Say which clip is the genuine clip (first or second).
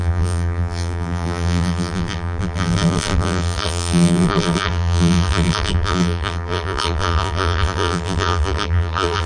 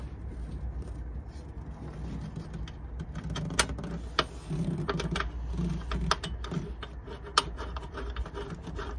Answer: second